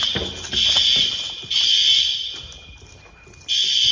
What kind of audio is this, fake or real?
real